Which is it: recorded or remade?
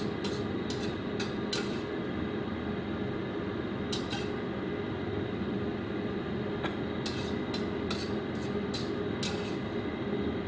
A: recorded